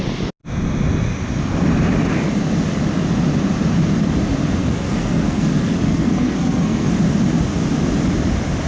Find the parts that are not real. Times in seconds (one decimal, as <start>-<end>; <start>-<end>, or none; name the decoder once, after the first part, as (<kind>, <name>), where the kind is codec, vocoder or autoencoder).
4.6-6.9 (codec, SNAC)